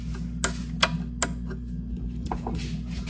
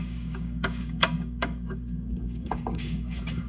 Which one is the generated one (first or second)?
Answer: second